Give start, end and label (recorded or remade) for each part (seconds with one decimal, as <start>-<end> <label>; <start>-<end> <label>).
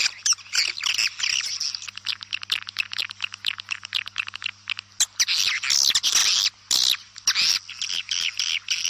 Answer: 0.0-8.9 recorded